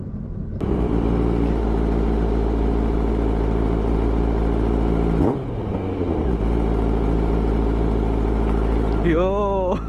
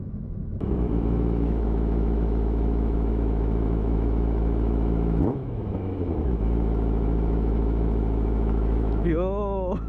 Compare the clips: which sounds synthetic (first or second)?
second